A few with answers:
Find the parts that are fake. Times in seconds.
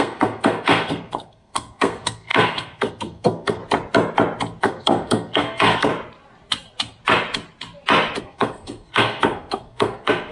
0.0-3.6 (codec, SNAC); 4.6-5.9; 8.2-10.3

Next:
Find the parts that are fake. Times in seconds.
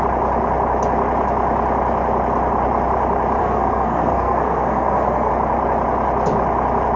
3.4-5.3 (codec, SNAC)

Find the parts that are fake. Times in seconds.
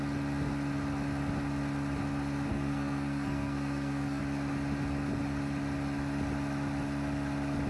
2.5-4.2 (codec, SNAC)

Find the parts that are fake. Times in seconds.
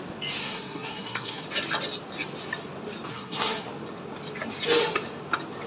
0.4-1.4 (codec, SNAC); 3.1-3.7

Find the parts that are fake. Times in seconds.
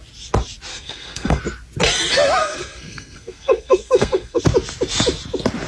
0.7-1.4 (codec, SNAC); 2.4-4.4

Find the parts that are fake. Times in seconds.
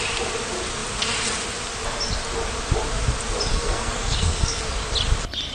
3.5-4.6 (codec, SNAC)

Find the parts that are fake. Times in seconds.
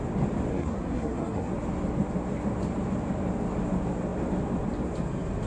0.5-1.5 (codec, SNAC)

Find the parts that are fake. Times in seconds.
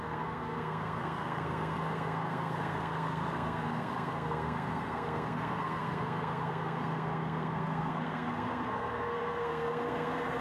0.0-10.4 (codec, SNAC)